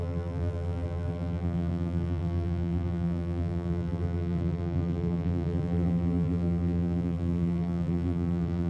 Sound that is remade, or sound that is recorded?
remade